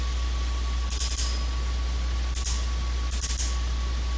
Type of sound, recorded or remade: recorded